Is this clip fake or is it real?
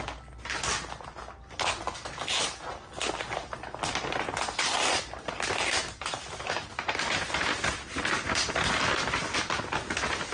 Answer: real